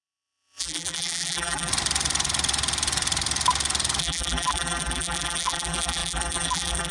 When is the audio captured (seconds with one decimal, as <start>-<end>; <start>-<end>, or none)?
1.7-4.0